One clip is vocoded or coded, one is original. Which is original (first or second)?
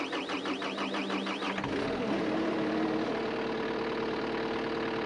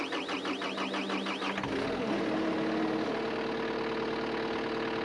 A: second